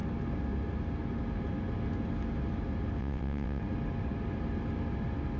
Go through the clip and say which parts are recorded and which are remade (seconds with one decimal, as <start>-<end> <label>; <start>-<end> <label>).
0.0-3.0 recorded; 3.0-3.6 remade; 3.6-5.4 recorded